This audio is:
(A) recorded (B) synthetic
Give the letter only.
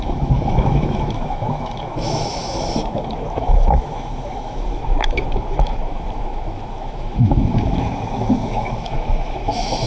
B